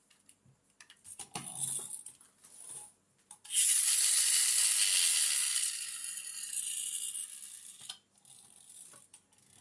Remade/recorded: recorded